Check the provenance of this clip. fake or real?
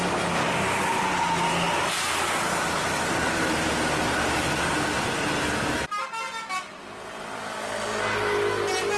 real